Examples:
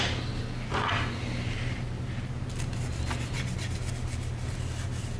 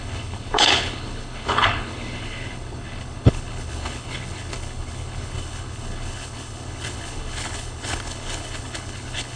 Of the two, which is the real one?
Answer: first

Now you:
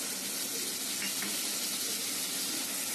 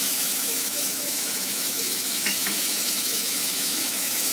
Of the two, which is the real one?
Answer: first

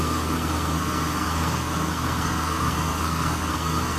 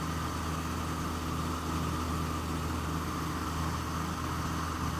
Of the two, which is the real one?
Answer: second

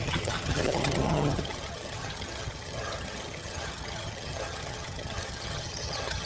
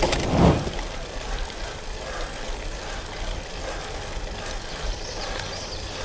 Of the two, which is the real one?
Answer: second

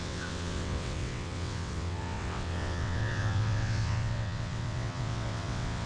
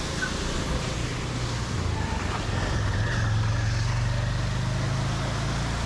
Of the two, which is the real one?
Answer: second